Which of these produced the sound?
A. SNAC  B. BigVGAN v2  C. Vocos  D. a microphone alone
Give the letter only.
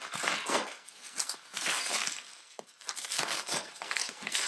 A